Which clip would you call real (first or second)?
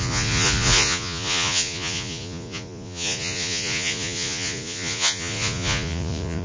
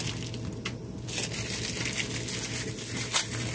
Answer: second